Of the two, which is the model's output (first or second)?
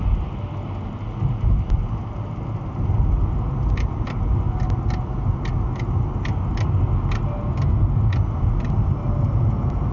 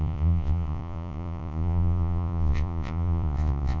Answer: second